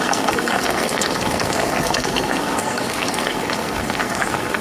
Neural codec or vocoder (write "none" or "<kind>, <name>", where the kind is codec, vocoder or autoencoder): codec, SNAC